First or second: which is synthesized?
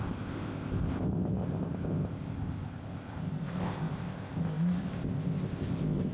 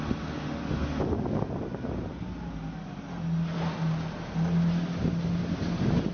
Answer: first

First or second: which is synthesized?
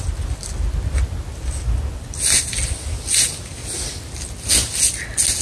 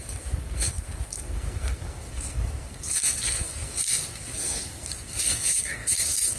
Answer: second